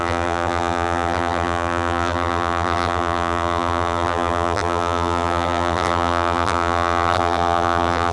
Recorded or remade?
remade